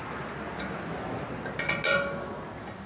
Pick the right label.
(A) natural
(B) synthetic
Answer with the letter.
A